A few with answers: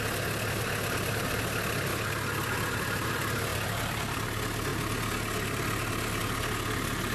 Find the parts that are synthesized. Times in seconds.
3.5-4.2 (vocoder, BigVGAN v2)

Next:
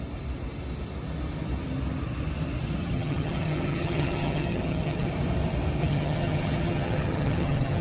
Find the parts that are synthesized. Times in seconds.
2.8-5.1 (vocoder, HiFi-GAN); 5.8-7.8

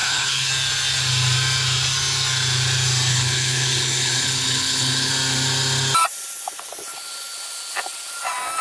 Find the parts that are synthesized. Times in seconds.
0.0-0.5 (codec, HILCodec); 3.1-5.1

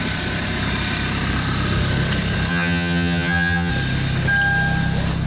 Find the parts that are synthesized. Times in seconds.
2.5-3.7 (vocoder, HiFi-GAN)